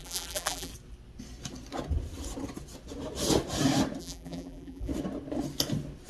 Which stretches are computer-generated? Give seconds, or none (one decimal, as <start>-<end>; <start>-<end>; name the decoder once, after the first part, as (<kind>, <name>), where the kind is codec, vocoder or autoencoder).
0.0-0.7 (vocoder, BigVGAN v2); 4.0-4.9